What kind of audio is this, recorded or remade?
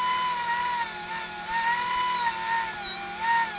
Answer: recorded